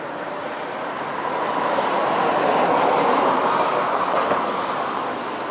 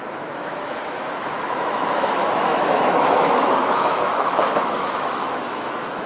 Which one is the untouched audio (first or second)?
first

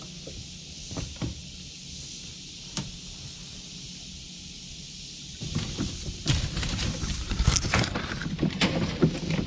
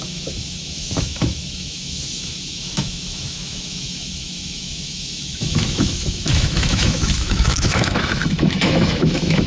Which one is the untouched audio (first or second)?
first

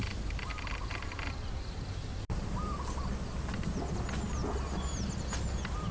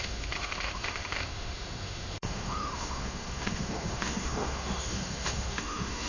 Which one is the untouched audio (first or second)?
first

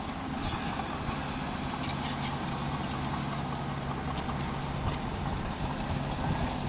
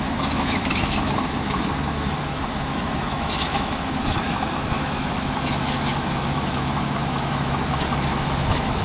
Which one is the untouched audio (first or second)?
first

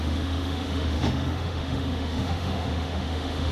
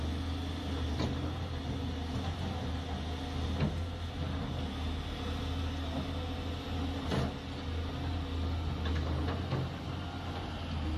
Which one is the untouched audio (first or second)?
second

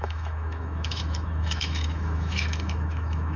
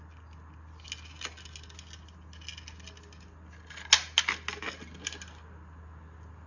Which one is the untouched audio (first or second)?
second